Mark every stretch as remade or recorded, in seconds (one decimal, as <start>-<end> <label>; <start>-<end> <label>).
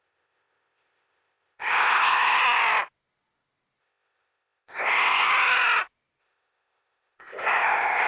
0.0-2.4 remade; 2.4-3.8 recorded; 3.8-5.3 remade; 5.3-6.2 recorded; 6.2-8.1 remade